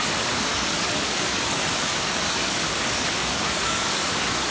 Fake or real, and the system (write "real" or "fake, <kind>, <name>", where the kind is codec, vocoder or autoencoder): fake, codec, DAC